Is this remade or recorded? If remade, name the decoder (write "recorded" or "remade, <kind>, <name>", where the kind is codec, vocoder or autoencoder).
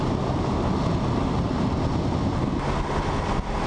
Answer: recorded